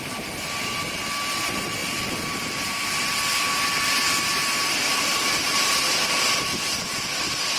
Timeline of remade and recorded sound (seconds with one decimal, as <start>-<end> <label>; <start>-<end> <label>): 0.0-7.6 recorded